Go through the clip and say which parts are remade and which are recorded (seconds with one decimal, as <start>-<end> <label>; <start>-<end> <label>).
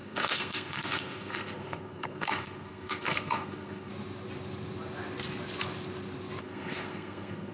0.0-3.9 remade; 3.9-6.4 recorded; 6.4-7.5 remade